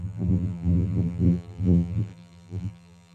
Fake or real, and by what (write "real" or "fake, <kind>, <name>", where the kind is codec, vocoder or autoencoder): fake, vocoder, BigVGAN v2